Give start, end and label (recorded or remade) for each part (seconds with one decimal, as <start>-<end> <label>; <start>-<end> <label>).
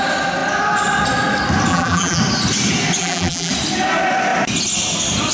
0.0-1.7 recorded; 1.7-2.2 remade; 2.2-3.0 recorded; 3.0-3.5 remade; 3.5-5.3 recorded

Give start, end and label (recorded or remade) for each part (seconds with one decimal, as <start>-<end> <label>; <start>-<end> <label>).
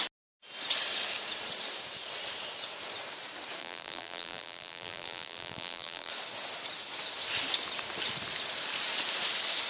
0.0-3.6 recorded; 3.6-6.1 remade; 6.1-9.7 recorded